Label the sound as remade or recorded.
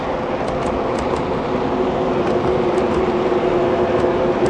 recorded